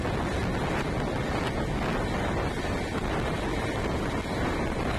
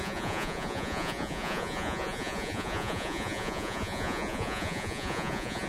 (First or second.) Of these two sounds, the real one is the first